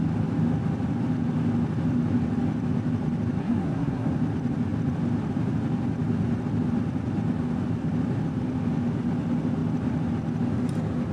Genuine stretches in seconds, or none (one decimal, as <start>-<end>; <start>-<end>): 0.0-3.4; 4.1-11.1

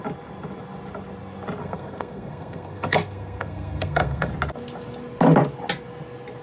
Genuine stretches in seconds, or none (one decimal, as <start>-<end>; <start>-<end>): 0.0-1.6; 4.3-6.4